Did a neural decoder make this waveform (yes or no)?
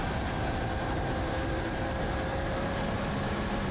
yes